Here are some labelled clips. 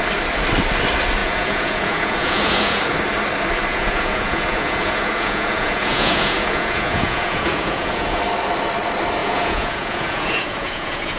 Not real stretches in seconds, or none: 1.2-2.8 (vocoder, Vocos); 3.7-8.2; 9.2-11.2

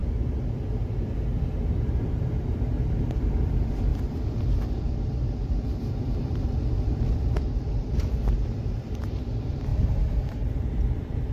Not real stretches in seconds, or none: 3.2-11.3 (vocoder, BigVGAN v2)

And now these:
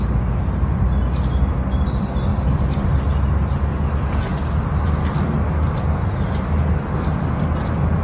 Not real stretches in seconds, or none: 2.3-3.0 (vocoder, BigVGAN v2); 4.3-6.0

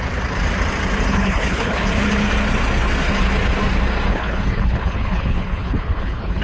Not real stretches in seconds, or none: 1.1-1.9 (codec, HILCodec); 4.1-6.4